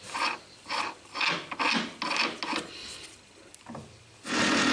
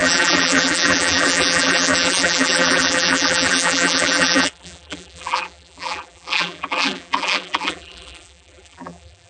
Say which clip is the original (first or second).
first